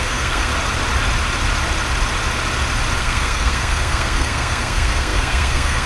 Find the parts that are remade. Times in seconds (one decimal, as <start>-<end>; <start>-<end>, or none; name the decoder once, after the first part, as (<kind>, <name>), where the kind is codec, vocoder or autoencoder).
0.0-0.5 (codec, SNAC); 3.0-5.9

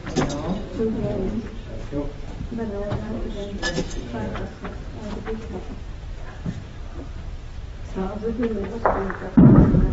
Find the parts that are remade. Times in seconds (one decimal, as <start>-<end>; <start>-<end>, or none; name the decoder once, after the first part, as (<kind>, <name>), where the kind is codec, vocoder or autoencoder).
1.3-9.9 (vocoder, BigVGAN v2)